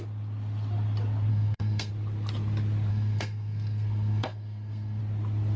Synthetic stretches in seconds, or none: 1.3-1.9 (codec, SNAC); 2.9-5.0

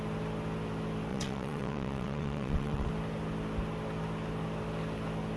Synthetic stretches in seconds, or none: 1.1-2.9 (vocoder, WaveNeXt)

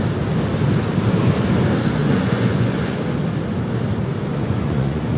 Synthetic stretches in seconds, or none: 2.0-3.0 (vocoder, Vocos); 4.3-5.2

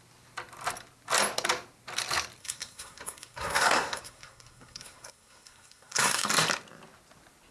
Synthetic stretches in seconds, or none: 2.4-6.3 (codec, SNAC)

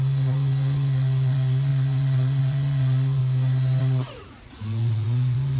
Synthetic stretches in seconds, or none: 0.0-3.2 (vocoder, Vocos); 3.8-5.6

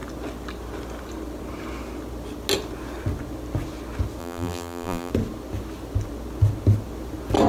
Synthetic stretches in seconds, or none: 4.2-5.1 (vocoder, BigVGAN v2)